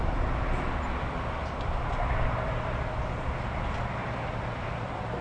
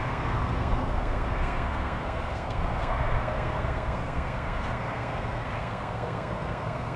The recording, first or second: first